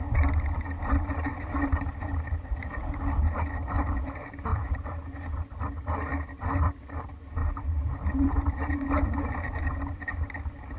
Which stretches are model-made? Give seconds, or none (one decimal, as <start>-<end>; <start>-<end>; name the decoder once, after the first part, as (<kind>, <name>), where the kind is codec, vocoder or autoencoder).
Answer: 1.3-3.0 (vocoder, BigVGAN v2); 4.5-5.0; 7.4-8.5